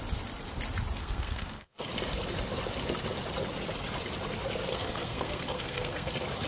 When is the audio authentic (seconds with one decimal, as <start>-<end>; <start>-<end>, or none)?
0.0-1.0; 1.9-4.7; 6.1-6.5